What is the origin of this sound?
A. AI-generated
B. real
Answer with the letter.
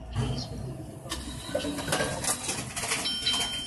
B